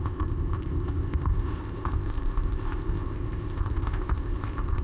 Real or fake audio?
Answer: fake